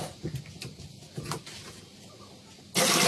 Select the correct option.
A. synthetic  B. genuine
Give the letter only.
B